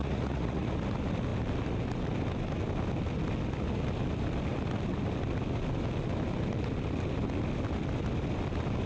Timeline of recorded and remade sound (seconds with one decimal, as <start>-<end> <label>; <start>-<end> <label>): 0.0-0.7 remade; 0.7-8.9 recorded